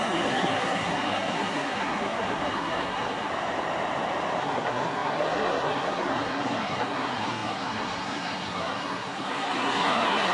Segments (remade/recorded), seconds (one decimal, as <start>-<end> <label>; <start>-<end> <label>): 0.0-3.3 remade; 3.3-4.4 recorded; 4.4-10.3 remade